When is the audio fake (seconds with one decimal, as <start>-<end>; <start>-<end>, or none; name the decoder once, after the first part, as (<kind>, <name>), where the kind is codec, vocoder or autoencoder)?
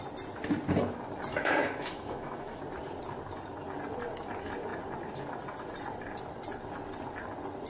1.3-2.6 (autoencoder, DAC-VAE)